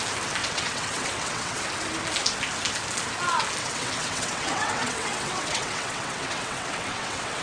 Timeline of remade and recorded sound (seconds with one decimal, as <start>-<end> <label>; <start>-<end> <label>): 0.0-0.4 recorded; 0.4-1.6 remade; 1.6-3.6 recorded; 3.6-7.4 remade